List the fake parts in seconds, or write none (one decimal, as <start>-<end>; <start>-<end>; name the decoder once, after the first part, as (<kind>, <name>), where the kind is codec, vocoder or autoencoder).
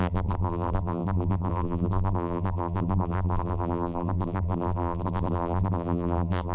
0.0-6.5 (vocoder, BigVGAN v2)